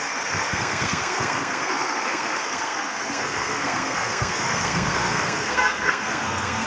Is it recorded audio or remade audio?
remade